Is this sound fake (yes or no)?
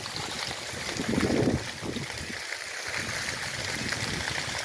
no